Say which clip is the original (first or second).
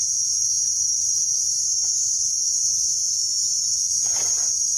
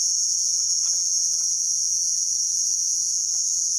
first